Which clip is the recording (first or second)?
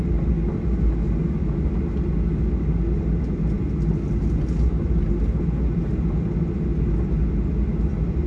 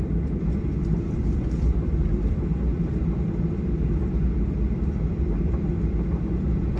first